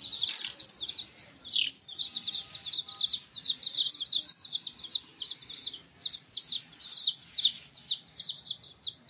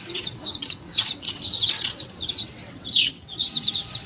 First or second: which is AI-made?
second